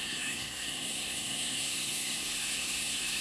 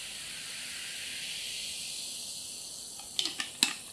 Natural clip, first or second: second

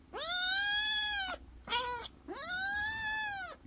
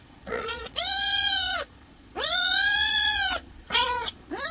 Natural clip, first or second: first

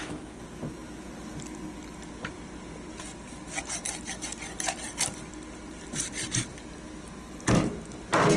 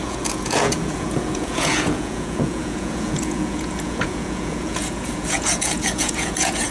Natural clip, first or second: first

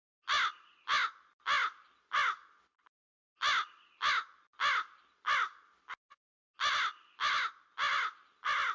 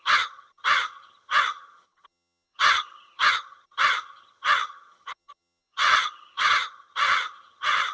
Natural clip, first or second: first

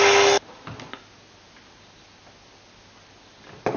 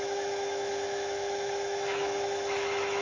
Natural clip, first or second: first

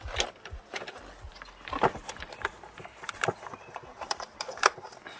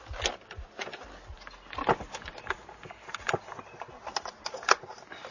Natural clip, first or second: second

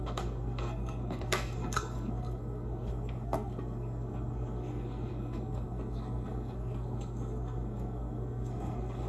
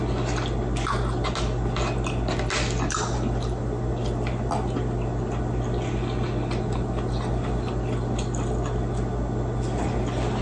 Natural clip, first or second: second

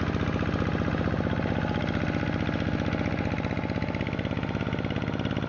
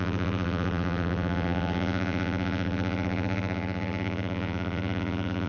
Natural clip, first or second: first